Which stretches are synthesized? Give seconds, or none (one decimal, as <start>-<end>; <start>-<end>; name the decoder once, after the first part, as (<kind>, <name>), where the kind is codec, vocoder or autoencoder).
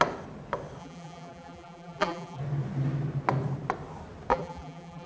0.8-2.4 (vocoder, BigVGAN v2); 4.3-5.1